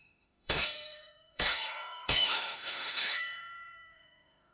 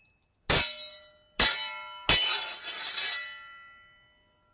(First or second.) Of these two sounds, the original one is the second